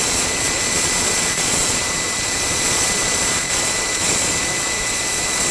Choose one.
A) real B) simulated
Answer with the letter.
B